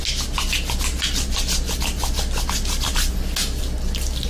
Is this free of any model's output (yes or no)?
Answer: yes